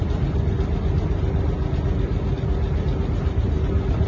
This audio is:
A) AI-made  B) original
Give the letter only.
B